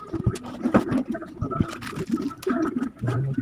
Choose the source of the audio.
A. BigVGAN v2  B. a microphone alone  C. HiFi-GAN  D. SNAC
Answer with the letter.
B